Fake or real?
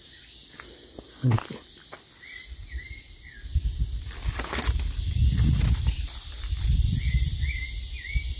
real